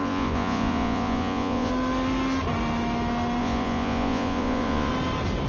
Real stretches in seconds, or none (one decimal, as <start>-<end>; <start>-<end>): 1.7-3.4; 4.9-5.5

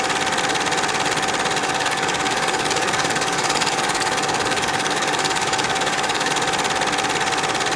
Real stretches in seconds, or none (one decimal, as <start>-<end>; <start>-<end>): 0.0-1.6; 6.3-7.8

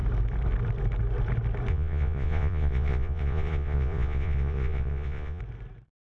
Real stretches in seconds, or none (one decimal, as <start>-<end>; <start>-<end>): 0.0-1.7; 5.4-6.1

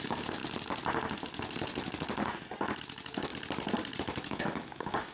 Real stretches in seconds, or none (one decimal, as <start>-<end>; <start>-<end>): 0.4-2.8; 3.3-4.0

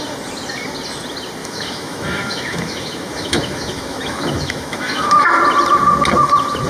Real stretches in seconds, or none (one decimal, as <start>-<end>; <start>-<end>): 0.0-1.4; 5.4-6.7